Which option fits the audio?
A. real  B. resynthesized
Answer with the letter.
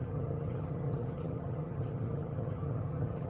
B